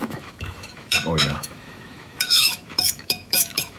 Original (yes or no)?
no